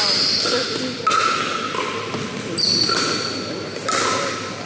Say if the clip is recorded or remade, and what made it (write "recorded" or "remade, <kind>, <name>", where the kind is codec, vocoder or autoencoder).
recorded